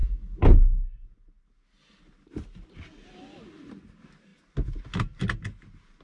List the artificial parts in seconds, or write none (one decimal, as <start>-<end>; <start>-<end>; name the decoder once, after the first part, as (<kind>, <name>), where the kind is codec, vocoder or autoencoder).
none